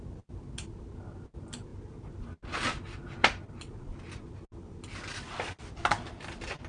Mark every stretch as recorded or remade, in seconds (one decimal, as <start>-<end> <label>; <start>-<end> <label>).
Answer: 0.0-6.7 recorded

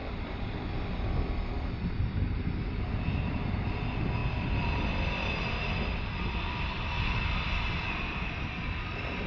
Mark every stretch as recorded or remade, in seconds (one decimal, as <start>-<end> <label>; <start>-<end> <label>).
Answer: 0.0-2.8 remade; 2.8-4.2 recorded; 4.2-9.3 remade

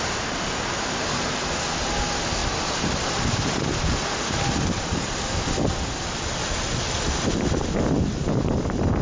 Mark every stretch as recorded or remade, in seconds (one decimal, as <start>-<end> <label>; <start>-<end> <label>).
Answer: 0.0-2.4 recorded; 2.4-5.8 remade; 5.8-9.0 recorded

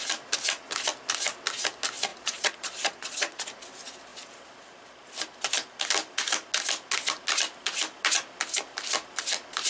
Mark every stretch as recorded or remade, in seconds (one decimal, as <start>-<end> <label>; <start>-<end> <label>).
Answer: 0.0-2.1 recorded; 2.1-3.4 remade; 3.4-9.7 recorded

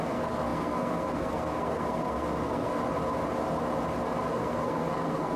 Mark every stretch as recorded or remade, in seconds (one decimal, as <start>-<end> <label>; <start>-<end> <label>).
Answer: 0.0-2.8 remade; 2.8-4.3 recorded; 4.3-5.4 remade

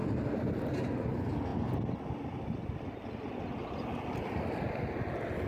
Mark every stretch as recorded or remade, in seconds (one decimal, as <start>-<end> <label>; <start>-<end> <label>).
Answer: 0.0-0.8 remade; 0.8-5.5 recorded

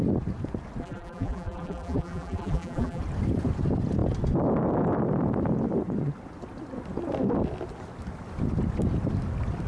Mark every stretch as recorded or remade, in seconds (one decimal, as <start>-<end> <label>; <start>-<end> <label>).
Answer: 0.0-0.8 recorded; 0.8-3.0 remade; 3.0-9.7 recorded